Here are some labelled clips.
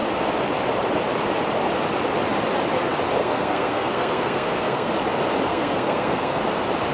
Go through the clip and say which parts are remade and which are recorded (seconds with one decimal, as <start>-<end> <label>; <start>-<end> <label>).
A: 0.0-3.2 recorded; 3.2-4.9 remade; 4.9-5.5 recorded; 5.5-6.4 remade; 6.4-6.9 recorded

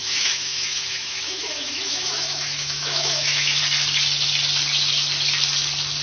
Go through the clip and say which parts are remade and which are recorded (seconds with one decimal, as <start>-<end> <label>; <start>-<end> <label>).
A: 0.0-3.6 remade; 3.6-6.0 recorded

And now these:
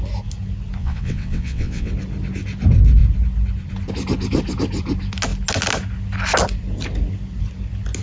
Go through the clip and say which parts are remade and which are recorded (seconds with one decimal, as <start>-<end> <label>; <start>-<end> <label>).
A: 0.0-0.8 recorded; 0.8-1.9 remade; 1.9-8.0 recorded